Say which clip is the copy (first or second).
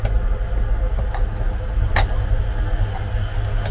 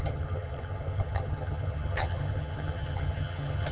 second